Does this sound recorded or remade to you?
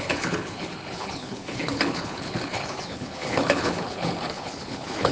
remade